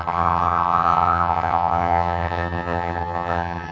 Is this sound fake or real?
fake